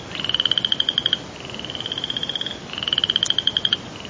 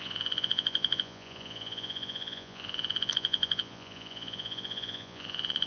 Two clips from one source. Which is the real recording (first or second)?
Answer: first